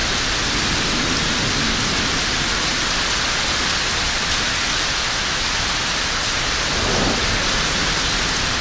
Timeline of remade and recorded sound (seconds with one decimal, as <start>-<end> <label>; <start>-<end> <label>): 0.0-8.6 recorded